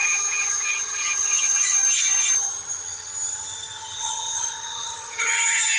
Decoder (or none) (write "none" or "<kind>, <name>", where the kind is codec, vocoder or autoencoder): vocoder, HiFi-GAN